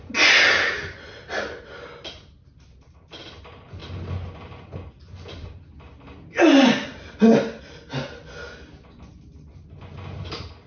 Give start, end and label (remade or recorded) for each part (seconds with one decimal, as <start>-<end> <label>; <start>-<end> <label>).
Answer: 0.0-10.7 recorded